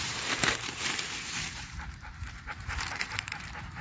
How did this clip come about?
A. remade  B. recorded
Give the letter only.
A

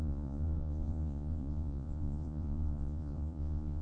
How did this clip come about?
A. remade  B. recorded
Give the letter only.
A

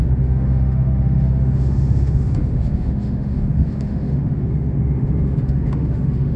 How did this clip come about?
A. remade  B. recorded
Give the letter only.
A